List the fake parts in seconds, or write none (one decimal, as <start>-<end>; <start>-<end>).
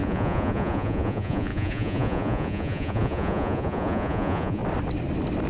0.0-4.6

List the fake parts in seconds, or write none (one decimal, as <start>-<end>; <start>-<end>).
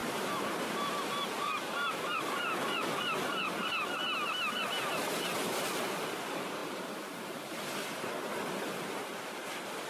0.0-2.2; 6.6-7.6; 9.0-9.9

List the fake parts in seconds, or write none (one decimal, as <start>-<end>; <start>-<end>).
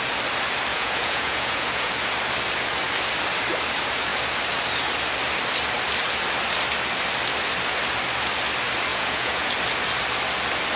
0.7-1.9; 8.9-9.5